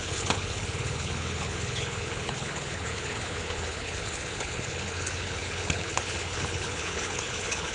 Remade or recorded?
remade